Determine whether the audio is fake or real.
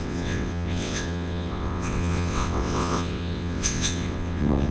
fake